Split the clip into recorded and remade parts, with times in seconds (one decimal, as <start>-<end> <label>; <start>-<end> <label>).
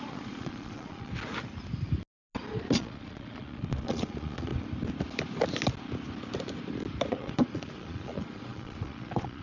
0.0-1.1 remade; 1.1-2.6 recorded; 2.6-4.5 remade; 4.5-7.1 recorded; 7.1-9.4 remade